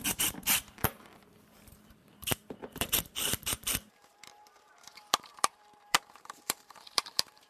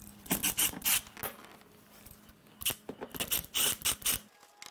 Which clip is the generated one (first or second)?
first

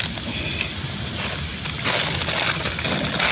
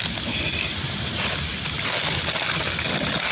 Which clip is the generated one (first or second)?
second